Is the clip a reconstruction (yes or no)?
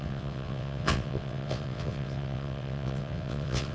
yes